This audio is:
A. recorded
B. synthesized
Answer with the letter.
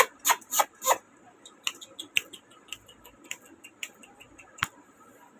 A